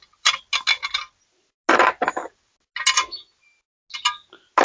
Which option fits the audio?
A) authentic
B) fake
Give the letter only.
A